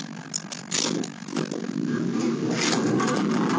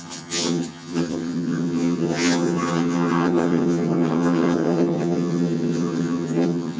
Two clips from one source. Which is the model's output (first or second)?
second